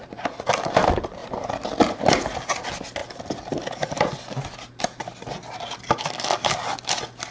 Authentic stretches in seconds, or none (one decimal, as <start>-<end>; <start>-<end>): 0.0-7.3